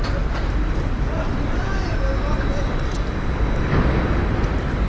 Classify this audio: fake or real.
real